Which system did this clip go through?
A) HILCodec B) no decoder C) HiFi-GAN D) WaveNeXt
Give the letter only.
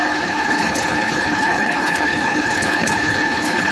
A